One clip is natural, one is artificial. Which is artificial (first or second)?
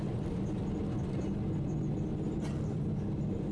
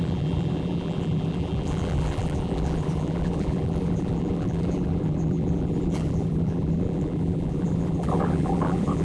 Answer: second